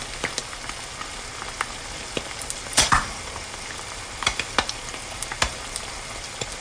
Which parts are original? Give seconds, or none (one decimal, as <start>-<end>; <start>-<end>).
0.0-2.7; 3.2-6.6